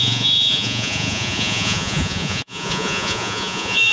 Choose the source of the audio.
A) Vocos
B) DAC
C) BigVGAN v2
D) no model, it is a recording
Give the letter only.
A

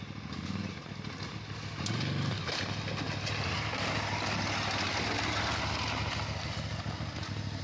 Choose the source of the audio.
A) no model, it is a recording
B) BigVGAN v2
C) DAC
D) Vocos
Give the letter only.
A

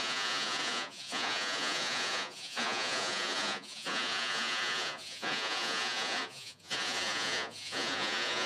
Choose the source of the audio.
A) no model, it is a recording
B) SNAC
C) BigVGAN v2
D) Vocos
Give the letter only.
D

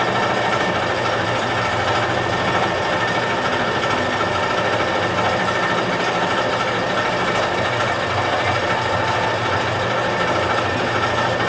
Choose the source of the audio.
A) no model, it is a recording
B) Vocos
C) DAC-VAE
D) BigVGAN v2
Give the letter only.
A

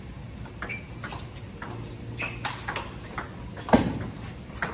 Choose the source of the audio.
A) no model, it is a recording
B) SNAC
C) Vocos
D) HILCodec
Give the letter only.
A